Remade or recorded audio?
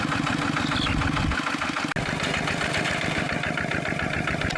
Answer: recorded